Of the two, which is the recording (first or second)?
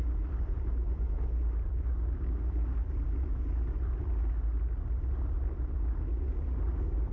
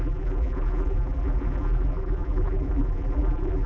first